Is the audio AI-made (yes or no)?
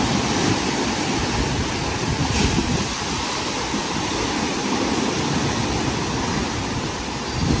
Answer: no